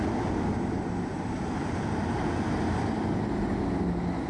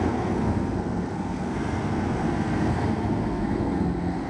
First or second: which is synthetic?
second